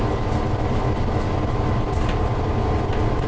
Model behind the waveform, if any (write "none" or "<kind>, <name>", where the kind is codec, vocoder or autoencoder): none